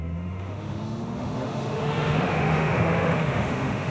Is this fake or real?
fake